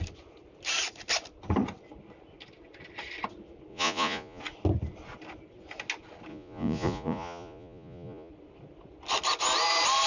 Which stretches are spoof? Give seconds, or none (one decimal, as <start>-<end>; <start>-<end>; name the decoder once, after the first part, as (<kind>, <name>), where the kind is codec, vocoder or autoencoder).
3.7-4.4 (vocoder, Vocos); 6.3-8.3